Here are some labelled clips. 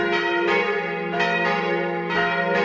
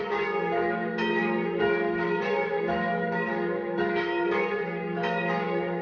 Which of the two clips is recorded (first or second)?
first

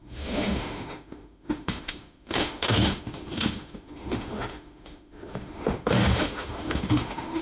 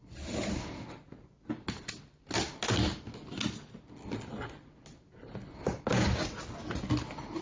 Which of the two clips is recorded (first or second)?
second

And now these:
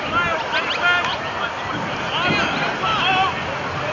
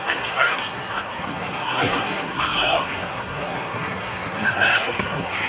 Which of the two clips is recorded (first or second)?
first